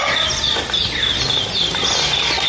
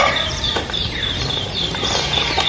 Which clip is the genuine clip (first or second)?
first